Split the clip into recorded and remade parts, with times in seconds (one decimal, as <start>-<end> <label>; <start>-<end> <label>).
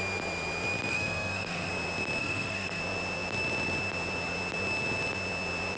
0.0-0.9 recorded; 0.9-1.7 remade; 1.7-2.2 recorded; 2.2-2.8 remade; 2.8-5.8 recorded